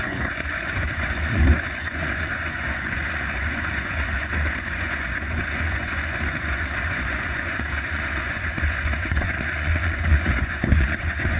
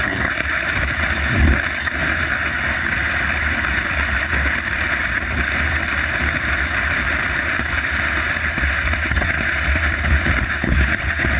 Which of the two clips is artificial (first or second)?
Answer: first